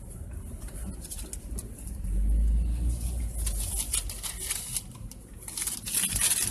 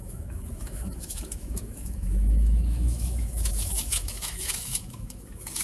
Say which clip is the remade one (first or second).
second